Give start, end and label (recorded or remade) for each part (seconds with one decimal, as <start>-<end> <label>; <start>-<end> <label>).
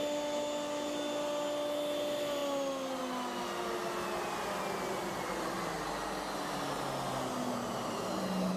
0.0-8.6 recorded